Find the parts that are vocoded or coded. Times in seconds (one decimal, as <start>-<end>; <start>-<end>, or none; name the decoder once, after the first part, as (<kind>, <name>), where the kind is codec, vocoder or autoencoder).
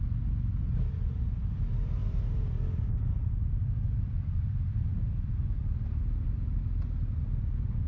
none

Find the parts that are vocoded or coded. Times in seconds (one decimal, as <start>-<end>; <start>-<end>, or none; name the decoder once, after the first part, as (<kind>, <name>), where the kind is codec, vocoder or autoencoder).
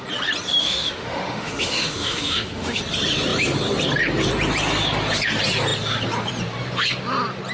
0.6-2.8 (autoencoder, DAC-VAE)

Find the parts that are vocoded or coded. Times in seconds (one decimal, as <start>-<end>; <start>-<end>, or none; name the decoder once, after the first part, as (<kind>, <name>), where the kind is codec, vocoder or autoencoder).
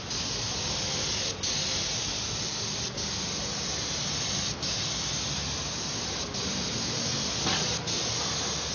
none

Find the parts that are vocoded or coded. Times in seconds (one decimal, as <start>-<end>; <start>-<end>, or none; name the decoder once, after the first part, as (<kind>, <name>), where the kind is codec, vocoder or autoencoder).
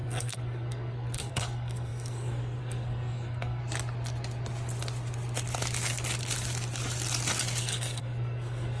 0.0-3.6 (codec, SNAC); 7.6-8.8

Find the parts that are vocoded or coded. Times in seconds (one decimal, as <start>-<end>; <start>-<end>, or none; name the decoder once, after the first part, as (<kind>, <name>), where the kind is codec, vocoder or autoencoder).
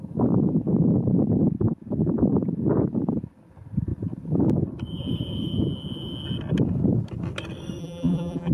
7.8-8.5 (vocoder, BigVGAN v2)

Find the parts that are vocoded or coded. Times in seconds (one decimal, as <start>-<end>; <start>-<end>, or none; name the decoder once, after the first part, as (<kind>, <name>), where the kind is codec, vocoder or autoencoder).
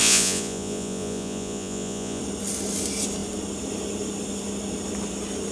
0.0-2.2 (vocoder, Vocos)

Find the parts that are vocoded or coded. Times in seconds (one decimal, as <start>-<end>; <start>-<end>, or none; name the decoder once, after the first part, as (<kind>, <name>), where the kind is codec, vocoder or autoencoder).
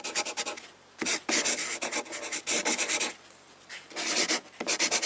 none